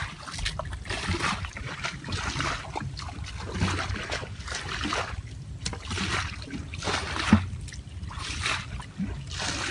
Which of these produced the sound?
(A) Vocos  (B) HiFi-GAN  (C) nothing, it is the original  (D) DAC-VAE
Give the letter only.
C